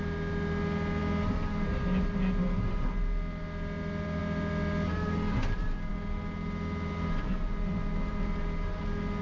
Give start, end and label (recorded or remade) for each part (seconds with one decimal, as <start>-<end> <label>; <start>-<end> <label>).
0.0-9.2 recorded